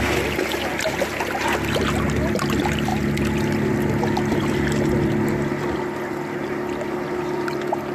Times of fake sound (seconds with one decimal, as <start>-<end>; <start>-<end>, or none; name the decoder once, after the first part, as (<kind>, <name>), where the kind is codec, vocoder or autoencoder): none